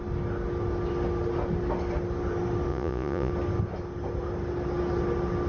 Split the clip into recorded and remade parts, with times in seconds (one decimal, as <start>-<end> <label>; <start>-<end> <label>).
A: 0.0-2.7 recorded; 2.7-3.3 remade; 3.3-5.5 recorded